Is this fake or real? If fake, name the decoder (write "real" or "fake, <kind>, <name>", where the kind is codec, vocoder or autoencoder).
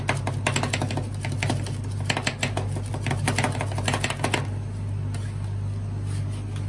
real